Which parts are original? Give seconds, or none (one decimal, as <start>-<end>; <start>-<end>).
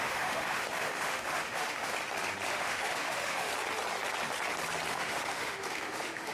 1.9-2.5; 3.5-4.9